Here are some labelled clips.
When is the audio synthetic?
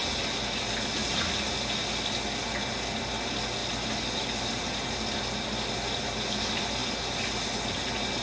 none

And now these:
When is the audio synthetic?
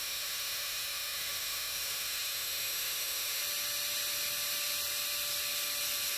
0.0-3.4 (autoencoder, DAC-VAE)